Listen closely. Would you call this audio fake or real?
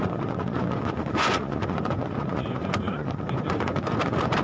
fake